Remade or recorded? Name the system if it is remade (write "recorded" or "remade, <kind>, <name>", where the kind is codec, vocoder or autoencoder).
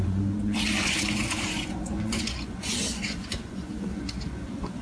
remade, vocoder, Vocos